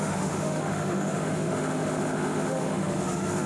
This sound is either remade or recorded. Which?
remade